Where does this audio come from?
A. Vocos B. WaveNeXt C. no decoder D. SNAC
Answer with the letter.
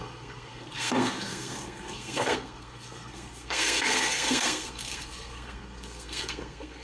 D